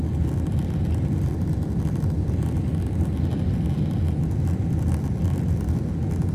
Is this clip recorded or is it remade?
recorded